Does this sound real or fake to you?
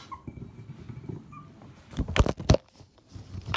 real